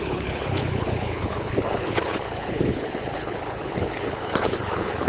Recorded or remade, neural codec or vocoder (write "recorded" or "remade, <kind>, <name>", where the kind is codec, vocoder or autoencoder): remade, codec, HILCodec